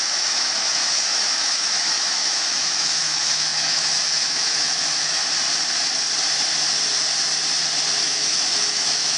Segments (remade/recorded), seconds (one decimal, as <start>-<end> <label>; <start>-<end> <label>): 0.0-5.2 remade; 5.2-8.0 recorded; 8.0-9.2 remade